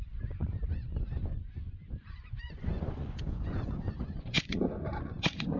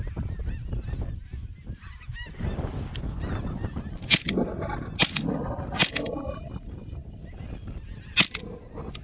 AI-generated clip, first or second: first